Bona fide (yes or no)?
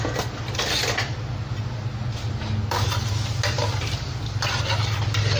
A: yes